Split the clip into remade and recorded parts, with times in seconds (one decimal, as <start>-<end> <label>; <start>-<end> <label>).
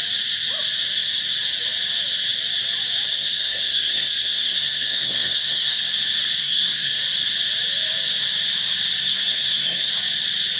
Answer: 0.0-3.1 recorded; 3.1-5.8 remade; 5.8-6.4 recorded; 6.4-7.0 remade; 7.0-9.0 recorded; 9.0-9.9 remade; 9.9-10.6 recorded